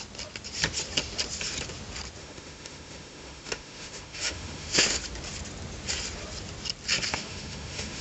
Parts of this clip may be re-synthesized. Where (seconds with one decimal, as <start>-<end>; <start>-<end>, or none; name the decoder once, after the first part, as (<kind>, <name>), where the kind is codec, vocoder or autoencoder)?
2.2-5.0 (autoencoder, DAC-VAE); 7.1-8.0